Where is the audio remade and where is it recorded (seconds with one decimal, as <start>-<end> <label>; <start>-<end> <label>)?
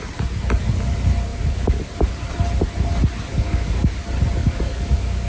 0.0-1.3 recorded; 1.3-1.8 remade; 1.8-3.3 recorded; 3.3-4.0 remade; 4.0-4.4 recorded; 4.4-5.3 remade